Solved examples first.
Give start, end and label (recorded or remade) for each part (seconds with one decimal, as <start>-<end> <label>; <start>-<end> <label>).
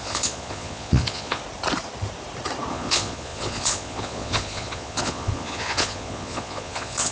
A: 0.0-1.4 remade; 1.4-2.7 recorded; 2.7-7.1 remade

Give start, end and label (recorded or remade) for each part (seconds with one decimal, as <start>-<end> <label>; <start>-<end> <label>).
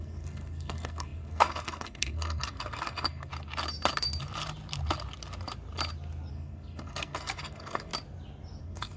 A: 0.0-3.3 remade; 3.3-6.3 recorded; 6.3-7.9 remade; 7.9-8.6 recorded; 8.6-9.0 remade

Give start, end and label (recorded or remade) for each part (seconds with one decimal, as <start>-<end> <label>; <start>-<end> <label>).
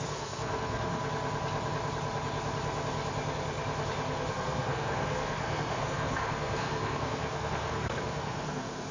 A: 0.0-1.0 remade; 1.0-4.3 recorded; 4.3-8.9 remade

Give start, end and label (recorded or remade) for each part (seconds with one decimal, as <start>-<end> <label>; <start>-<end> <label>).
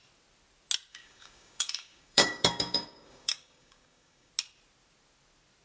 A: 0.0-0.9 recorded; 0.9-4.3 remade; 4.3-5.6 recorded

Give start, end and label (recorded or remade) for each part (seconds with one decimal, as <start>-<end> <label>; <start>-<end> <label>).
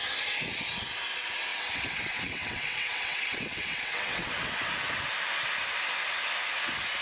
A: 0.0-1.5 recorded; 1.5-4.3 remade; 4.3-7.0 recorded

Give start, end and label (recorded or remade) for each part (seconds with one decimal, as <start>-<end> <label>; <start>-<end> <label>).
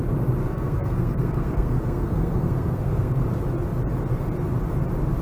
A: 0.0-0.4 recorded; 0.4-3.2 remade; 3.2-5.2 recorded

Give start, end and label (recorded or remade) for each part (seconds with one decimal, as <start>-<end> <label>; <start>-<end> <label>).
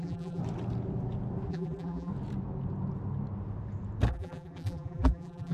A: 0.0-0.4 remade; 0.4-1.5 recorded; 1.5-2.1 remade; 2.1-4.1 recorded; 4.1-5.5 remade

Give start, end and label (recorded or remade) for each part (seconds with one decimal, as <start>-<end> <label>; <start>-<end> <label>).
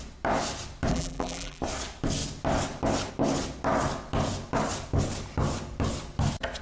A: 0.0-0.9 recorded; 0.9-1.6 remade; 1.6-6.6 recorded